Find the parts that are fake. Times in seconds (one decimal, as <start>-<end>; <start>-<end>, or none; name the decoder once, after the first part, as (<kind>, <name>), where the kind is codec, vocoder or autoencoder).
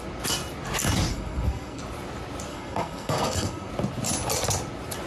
1.1-1.8 (codec, SNAC); 2.5-3.7